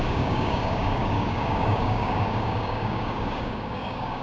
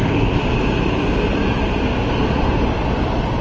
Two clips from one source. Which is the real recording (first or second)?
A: second